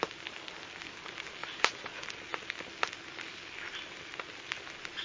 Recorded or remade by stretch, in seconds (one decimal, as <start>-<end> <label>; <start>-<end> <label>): 0.0-5.0 recorded